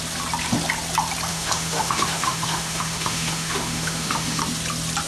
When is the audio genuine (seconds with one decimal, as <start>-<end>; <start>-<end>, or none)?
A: 0.0-1.3; 4.4-5.1